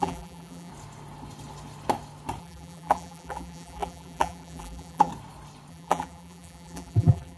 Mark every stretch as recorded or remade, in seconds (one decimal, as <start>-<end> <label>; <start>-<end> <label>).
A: 0.0-0.7 remade; 0.7-2.4 recorded; 2.4-5.1 remade; 5.1-5.7 recorded; 5.7-7.4 remade